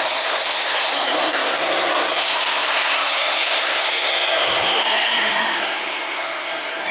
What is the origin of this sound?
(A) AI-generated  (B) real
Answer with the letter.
A